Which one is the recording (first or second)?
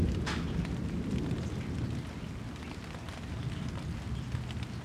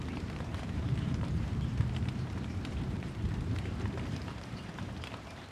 first